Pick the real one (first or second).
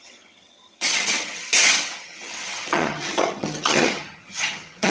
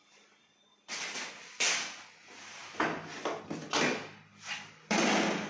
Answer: second